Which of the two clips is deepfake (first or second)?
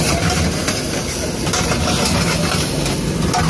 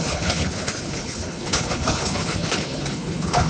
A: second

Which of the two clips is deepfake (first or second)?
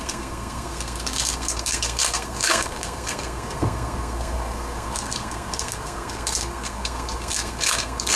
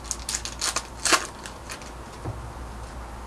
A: first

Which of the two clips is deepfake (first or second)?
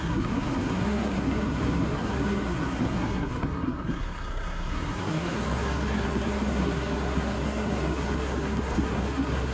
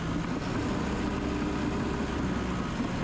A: first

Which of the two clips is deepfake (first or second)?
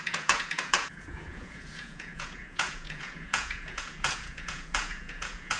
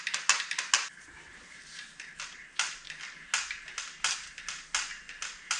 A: first